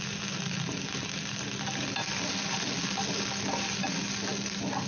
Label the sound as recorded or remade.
recorded